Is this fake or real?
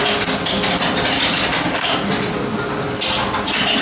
real